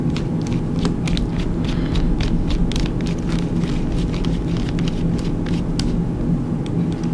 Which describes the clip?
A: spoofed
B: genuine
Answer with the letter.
B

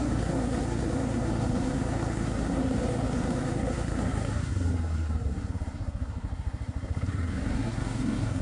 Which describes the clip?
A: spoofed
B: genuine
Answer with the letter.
A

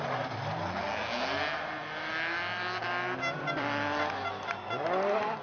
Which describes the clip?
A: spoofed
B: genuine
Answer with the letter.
B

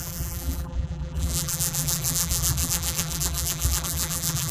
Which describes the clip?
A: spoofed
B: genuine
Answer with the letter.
A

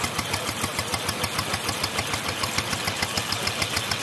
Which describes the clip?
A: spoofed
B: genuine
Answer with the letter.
B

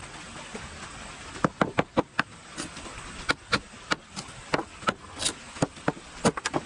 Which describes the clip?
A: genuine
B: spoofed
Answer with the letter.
A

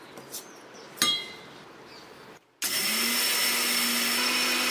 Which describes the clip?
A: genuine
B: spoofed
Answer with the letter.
A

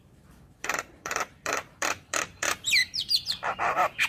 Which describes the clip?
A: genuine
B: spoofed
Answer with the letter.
B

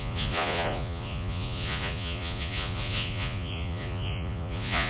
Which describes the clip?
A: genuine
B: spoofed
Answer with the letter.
B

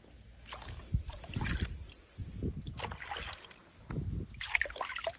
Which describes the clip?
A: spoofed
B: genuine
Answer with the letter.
B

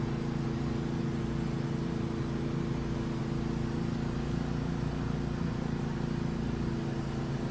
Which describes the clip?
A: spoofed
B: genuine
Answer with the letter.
B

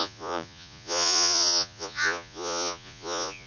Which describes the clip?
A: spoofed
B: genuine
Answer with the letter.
A